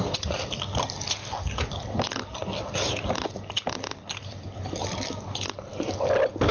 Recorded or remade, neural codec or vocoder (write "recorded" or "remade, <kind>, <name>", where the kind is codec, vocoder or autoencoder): recorded